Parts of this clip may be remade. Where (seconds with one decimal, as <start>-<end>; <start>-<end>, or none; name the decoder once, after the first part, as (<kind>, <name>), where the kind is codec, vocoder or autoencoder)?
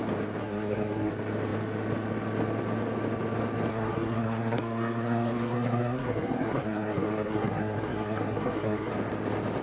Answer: 0.4-1.1 (codec, SNAC); 3.7-8.9